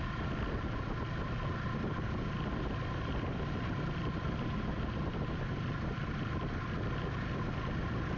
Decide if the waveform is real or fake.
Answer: real